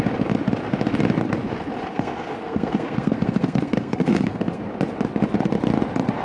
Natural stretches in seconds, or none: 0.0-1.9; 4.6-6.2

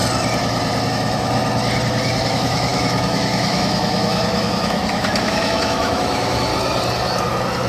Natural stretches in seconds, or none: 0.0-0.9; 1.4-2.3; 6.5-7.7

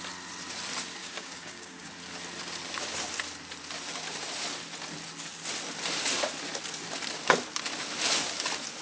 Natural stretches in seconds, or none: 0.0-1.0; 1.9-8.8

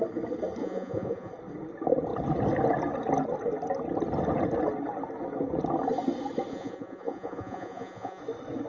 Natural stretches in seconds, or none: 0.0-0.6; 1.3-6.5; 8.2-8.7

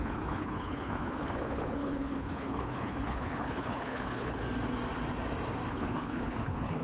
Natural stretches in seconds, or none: 4.4-5.7